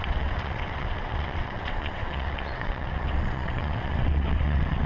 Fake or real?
fake